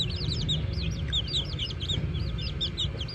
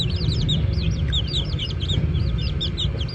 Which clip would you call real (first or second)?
first